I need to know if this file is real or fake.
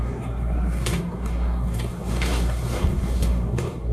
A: fake